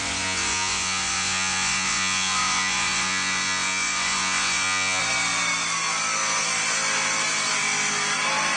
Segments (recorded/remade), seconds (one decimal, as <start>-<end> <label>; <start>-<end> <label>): 0.0-5.0 remade; 5.0-8.6 recorded